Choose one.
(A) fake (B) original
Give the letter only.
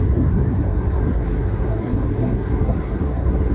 A